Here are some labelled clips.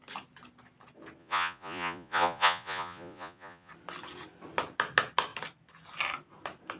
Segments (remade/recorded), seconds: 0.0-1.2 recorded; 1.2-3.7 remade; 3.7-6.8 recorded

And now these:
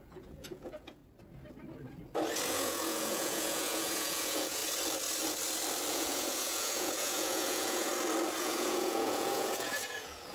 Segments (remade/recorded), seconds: 0.0-1.0 remade; 1.0-2.5 recorded; 2.5-4.6 remade; 4.6-5.9 recorded; 5.9-7.9 remade; 7.9-8.4 recorded; 8.4-10.3 remade

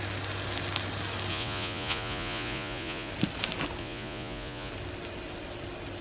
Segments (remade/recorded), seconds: 0.0-1.3 recorded; 1.3-3.1 remade; 3.1-3.8 recorded; 3.8-4.7 remade; 4.7-6.0 recorded

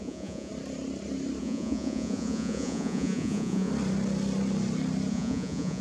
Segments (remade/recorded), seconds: 0.0-0.5 remade; 0.5-1.4 recorded; 1.4-3.7 remade; 3.7-5.1 recorded; 5.1-5.8 remade

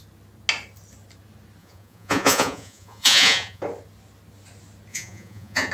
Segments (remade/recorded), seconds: 0.0-1.6 recorded; 1.6-3.6 remade; 3.6-4.9 recorded; 4.9-5.7 remade